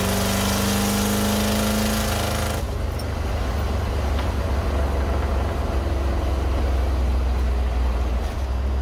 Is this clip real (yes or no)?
yes